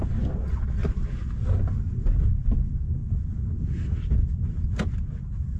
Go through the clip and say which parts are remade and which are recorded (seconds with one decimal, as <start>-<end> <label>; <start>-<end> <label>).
0.0-5.6 recorded